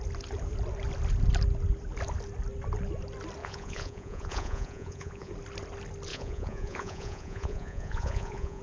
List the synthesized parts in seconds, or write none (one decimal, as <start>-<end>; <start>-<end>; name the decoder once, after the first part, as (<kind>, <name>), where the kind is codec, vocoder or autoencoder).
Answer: 3.4-5.3 (vocoder, Vocos); 6.1-8.6